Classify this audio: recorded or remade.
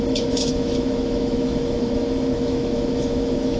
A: remade